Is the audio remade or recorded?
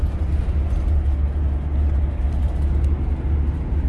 recorded